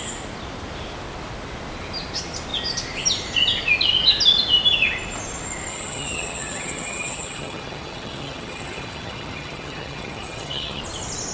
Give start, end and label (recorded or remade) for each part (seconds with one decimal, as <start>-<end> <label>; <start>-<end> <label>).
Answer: 0.0-5.7 recorded; 5.7-10.8 remade; 10.8-11.3 recorded